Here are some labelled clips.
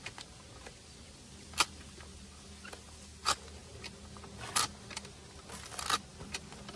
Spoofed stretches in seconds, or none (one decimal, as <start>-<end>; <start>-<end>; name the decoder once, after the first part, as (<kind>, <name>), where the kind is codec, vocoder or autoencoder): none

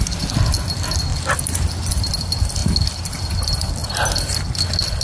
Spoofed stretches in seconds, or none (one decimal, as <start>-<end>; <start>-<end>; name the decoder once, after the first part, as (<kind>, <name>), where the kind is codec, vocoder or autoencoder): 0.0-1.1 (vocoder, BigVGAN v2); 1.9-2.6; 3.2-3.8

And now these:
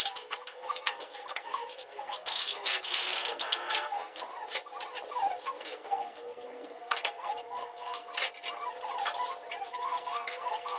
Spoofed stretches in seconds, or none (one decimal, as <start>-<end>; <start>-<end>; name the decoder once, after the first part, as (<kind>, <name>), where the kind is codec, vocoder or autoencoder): 0.0-4.3 (codec, SNAC); 5.4-8.1; 9.6-10.8

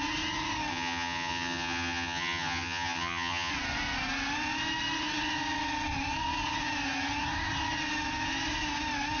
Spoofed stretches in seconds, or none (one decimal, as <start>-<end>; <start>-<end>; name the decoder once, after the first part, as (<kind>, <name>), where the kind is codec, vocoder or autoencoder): 0.7-3.5 (vocoder, HiFi-GAN)

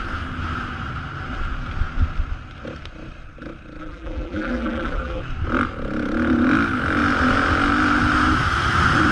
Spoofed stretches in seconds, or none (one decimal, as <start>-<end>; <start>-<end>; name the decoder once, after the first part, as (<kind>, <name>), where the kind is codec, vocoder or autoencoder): 3.8-5.2 (vocoder, BigVGAN v2)